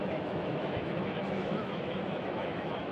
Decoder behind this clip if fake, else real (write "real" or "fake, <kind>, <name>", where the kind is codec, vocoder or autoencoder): fake, autoencoder, DAC-VAE